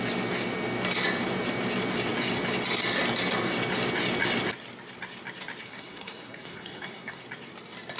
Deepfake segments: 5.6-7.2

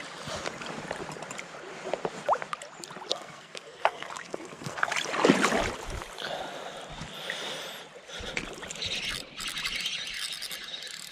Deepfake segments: 3.1-4.9

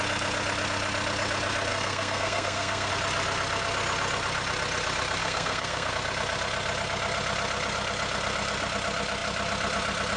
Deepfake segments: 1.7-2.9; 5.2-5.9

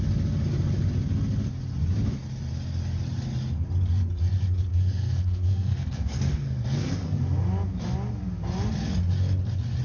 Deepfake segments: 4.7-7.2

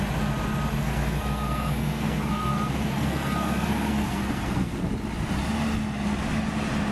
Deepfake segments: 0.8-4.9